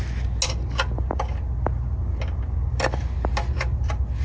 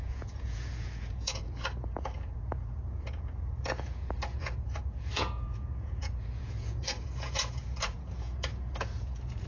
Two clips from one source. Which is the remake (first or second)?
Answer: second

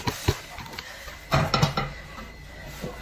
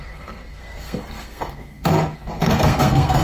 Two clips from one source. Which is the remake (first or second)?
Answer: second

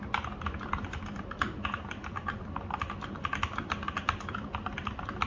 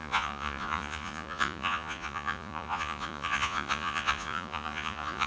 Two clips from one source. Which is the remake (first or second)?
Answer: second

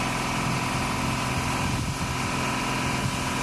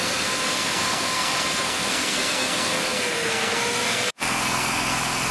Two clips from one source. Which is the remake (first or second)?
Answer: second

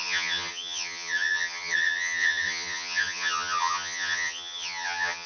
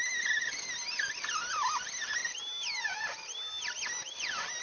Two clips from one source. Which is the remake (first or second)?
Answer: first